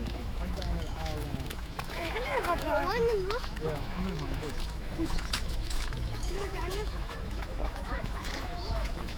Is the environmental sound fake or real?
fake